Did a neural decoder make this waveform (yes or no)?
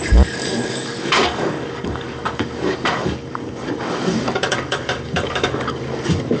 yes